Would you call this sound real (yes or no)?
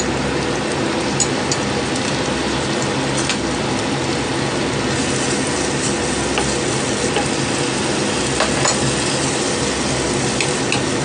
yes